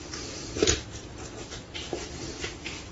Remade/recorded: recorded